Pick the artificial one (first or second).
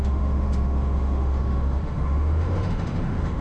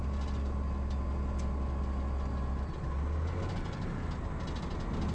first